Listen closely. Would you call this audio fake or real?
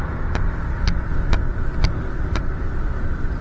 real